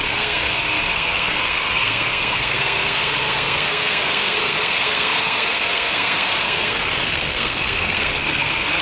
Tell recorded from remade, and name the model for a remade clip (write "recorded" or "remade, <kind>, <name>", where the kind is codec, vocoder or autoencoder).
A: remade, codec, SNAC